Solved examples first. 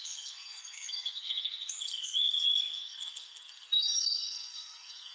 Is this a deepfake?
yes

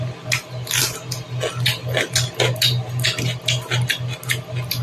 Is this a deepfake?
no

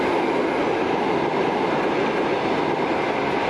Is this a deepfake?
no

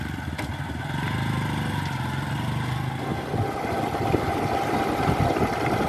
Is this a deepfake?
no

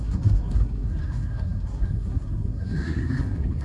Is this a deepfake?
yes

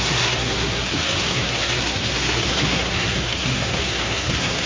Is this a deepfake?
yes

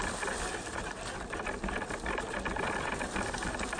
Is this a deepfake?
no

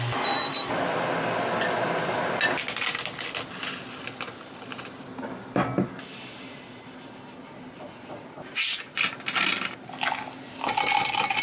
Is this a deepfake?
no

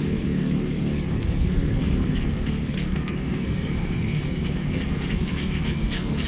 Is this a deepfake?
yes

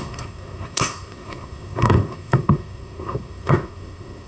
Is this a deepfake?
yes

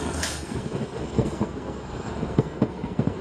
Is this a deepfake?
yes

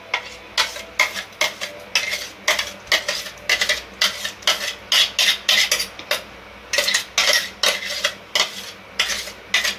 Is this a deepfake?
no